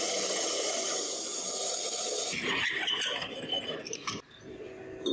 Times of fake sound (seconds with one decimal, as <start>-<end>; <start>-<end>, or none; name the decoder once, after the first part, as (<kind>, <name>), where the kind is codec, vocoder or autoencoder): none